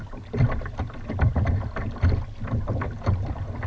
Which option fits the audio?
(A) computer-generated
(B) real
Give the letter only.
B